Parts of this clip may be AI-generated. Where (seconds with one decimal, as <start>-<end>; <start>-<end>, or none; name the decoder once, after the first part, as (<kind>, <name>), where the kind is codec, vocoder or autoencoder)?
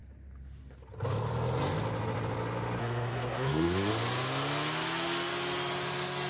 2.8-3.9 (codec, SNAC)